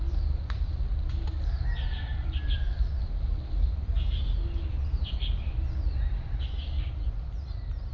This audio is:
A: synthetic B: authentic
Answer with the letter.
B